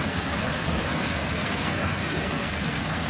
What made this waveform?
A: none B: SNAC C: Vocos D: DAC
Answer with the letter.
B